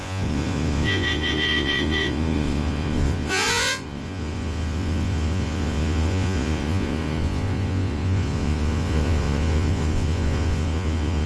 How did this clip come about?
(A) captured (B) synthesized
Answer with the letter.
B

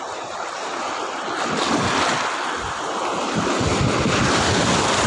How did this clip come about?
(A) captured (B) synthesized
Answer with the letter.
A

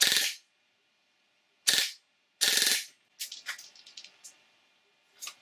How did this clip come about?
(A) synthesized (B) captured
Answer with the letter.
B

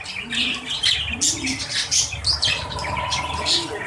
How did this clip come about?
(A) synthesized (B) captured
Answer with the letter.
B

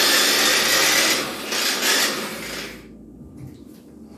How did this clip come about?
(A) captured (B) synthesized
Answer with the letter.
A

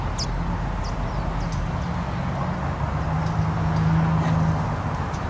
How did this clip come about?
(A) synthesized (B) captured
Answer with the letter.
B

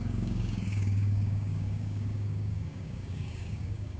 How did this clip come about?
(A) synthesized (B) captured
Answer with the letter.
A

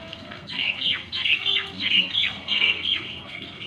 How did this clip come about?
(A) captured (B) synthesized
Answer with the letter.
B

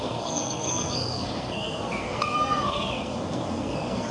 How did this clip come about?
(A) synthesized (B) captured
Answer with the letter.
A